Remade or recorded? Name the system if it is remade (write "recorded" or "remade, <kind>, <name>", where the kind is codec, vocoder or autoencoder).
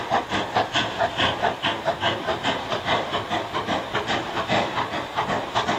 recorded